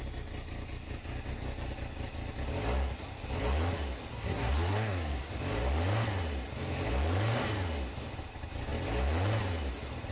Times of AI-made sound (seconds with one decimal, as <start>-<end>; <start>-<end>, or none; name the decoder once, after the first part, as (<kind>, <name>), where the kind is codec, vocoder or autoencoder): 4.1-5.3 (codec, SNAC)